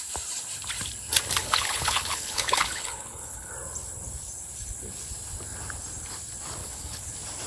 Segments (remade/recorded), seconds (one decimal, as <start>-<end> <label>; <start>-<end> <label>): 0.0-1.4 recorded; 1.4-3.5 remade; 3.5-6.6 recorded; 6.6-7.1 remade; 7.1-7.5 recorded